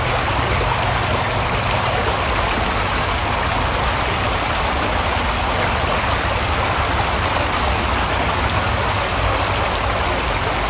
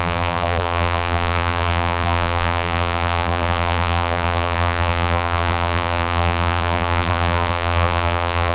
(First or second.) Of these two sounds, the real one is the first